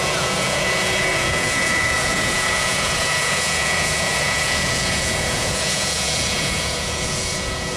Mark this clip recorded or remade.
remade